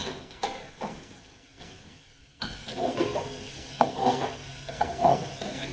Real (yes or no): no